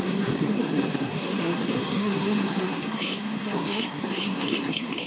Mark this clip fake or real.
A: fake